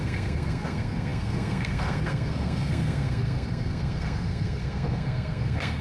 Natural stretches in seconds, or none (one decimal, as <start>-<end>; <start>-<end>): none